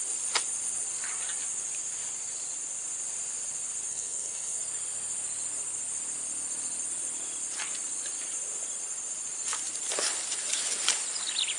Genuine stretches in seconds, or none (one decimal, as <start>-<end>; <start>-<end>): 0.0-3.9; 4.6-11.6